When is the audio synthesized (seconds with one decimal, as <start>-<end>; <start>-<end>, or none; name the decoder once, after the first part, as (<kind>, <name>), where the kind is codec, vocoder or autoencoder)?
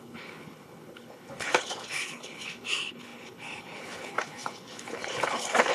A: 0.0-5.7 (codec, HILCodec)